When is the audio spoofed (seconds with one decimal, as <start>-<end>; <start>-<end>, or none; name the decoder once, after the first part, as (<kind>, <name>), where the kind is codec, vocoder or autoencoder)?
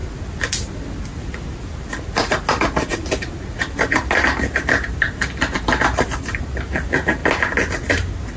0.0-1.9 (vocoder, BigVGAN v2); 2.9-6.4